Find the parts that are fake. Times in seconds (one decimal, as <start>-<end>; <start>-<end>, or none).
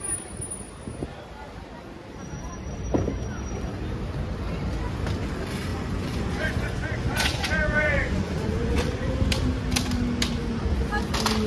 5.7-9.1